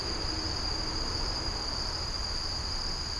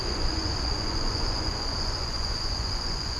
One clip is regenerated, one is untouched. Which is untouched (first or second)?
first